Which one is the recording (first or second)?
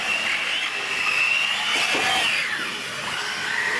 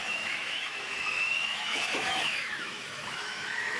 first